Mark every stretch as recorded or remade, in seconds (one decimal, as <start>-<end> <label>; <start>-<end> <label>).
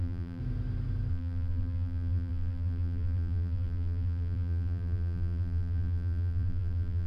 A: 0.0-0.4 remade; 0.4-1.1 recorded; 1.1-7.1 remade